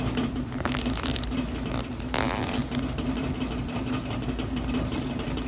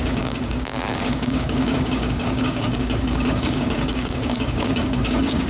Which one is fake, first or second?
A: second